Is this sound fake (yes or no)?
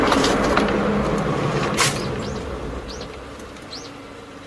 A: no